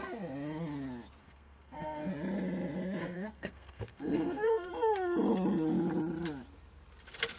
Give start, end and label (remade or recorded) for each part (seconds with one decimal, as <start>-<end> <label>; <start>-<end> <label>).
0.0-1.2 recorded; 1.2-2.1 remade; 2.1-3.0 recorded; 3.0-4.7 remade; 4.7-7.4 recorded